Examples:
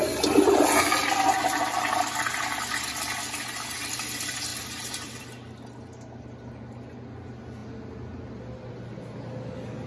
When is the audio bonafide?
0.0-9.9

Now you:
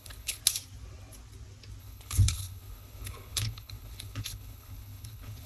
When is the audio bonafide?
0.4-1.8

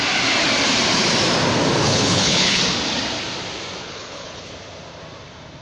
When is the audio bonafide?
0.0-1.8; 2.6-3.8; 4.5-5.6